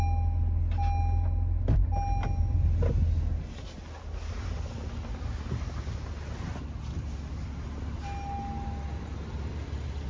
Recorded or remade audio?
recorded